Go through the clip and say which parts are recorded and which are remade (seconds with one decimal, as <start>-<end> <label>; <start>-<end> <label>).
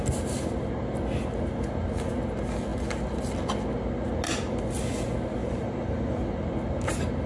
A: 0.0-5.4 recorded; 5.4-6.3 remade; 6.3-7.3 recorded